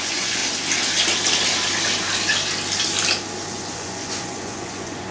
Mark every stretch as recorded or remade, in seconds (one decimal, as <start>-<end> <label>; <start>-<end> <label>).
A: 0.0-0.4 remade; 0.4-3.5 recorded; 3.5-5.1 remade